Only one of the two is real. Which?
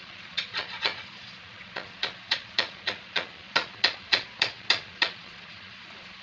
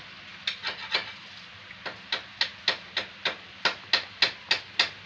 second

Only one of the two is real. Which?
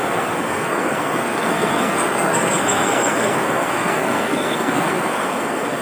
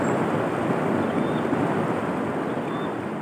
second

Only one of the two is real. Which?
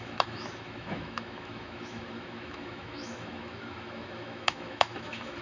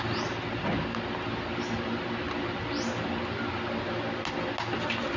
second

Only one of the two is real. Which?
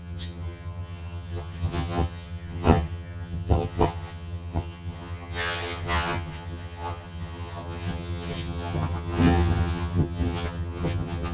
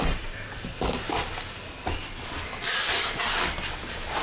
second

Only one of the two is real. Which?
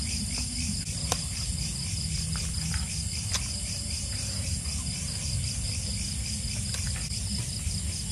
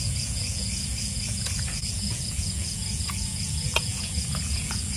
first